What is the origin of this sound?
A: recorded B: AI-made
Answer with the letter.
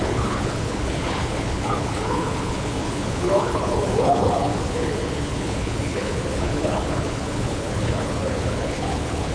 B